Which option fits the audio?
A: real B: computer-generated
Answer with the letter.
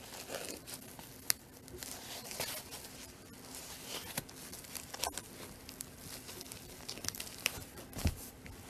A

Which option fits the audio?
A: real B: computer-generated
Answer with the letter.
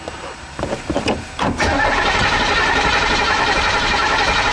B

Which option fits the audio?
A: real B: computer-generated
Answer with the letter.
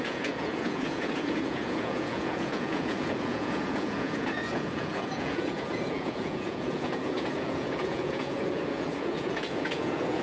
B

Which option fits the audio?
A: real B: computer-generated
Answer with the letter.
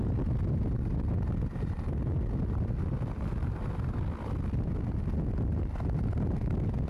A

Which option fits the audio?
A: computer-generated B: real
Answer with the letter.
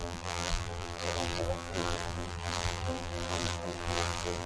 A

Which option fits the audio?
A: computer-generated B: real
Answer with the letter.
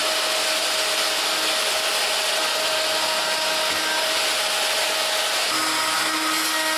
B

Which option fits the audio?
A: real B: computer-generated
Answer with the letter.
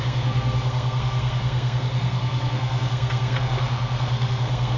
B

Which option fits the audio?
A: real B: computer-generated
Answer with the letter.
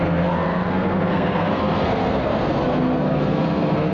B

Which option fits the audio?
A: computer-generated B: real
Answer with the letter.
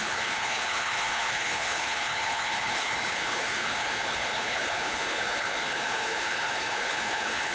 A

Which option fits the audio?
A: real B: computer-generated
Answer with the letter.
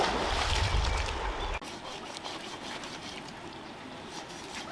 A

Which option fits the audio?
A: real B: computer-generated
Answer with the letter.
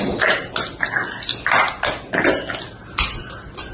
A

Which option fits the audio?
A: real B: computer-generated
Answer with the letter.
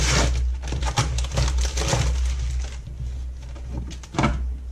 A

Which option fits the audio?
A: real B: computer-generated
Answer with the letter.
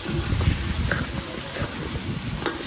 A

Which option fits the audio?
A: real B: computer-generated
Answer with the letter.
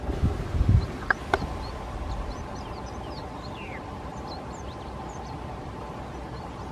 A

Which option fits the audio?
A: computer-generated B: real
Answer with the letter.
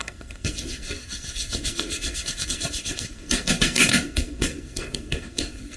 A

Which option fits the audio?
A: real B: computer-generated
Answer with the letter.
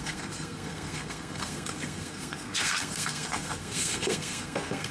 B